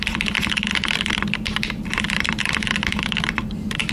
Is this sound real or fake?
real